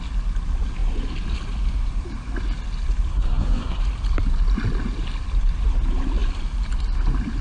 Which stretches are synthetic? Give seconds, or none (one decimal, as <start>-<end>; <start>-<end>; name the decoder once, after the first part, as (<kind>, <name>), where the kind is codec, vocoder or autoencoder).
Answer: 3.1-3.8 (codec, SNAC)